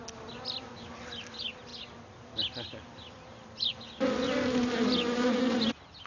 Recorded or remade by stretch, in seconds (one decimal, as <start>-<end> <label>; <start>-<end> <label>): 0.0-6.1 recorded